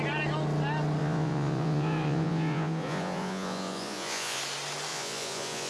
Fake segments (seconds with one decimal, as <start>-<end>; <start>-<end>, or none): 1.0-4.4; 4.9-5.7